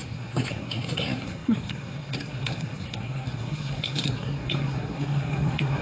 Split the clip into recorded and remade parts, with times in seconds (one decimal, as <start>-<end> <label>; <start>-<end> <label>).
0.0-5.8 remade